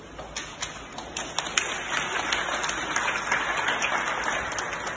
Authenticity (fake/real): real